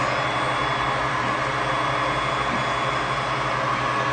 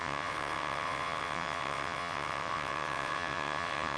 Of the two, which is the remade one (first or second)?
second